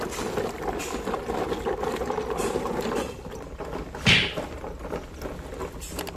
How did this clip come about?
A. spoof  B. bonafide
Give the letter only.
B